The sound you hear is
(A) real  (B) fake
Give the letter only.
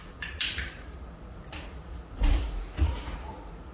B